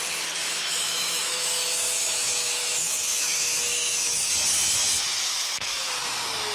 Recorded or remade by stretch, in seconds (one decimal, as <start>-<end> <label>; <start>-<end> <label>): 0.0-0.4 recorded; 0.4-4.3 remade; 4.3-5.3 recorded; 5.3-5.9 remade; 5.9-6.5 recorded